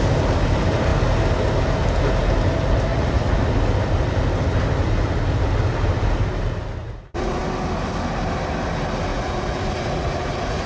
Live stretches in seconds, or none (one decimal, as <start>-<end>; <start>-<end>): 0.0-2.9; 3.4-6.8; 7.4-9.1